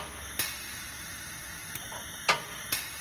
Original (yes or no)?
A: yes